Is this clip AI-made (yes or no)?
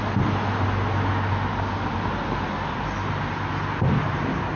no